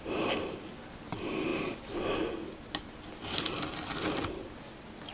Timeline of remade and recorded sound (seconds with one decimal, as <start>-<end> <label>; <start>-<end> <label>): 0.0-5.1 recorded